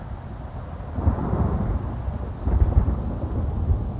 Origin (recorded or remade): recorded